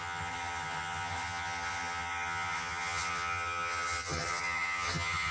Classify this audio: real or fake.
fake